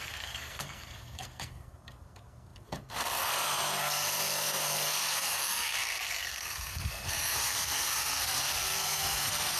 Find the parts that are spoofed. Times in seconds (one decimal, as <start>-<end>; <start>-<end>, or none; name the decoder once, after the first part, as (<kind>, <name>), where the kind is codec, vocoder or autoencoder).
0.0-9.6 (codec, SNAC)